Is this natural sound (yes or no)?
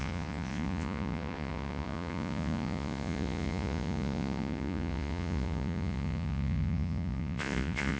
no